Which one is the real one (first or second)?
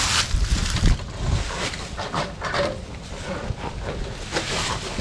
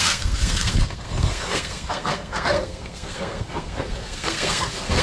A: first